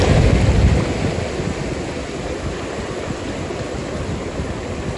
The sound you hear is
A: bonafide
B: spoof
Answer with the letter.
A